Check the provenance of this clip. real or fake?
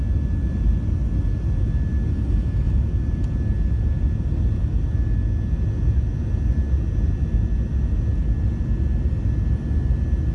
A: real